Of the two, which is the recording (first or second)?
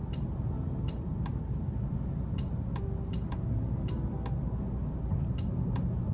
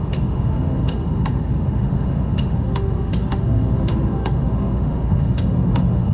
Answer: first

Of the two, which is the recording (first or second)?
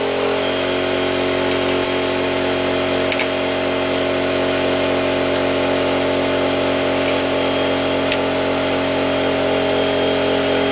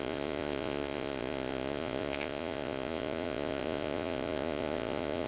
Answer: first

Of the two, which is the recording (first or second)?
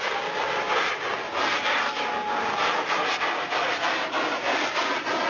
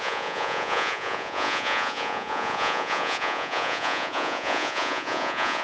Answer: first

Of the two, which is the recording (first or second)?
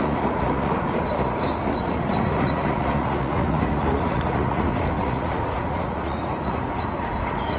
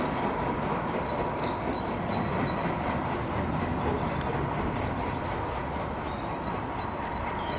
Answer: second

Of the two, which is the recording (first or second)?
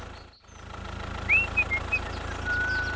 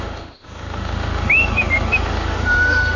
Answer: first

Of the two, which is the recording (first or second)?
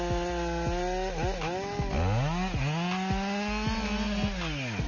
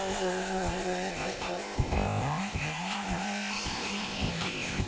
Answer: first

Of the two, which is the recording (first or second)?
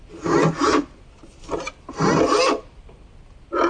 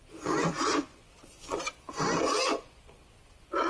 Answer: first